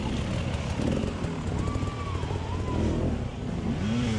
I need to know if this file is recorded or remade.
recorded